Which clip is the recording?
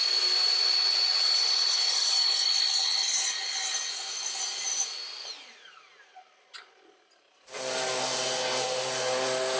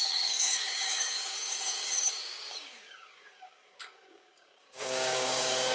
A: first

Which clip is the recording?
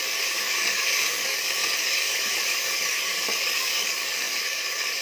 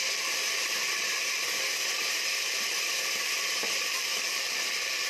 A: second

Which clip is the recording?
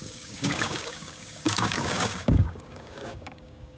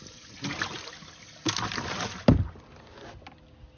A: second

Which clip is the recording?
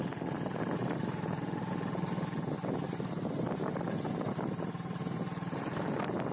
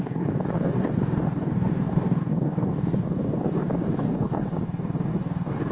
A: first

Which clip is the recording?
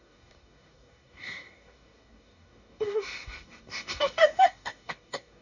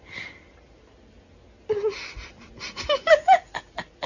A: second